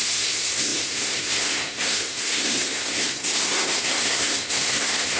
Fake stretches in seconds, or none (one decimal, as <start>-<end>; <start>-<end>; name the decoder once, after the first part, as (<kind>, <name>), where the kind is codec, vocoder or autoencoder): 0.0-5.2 (codec, SNAC)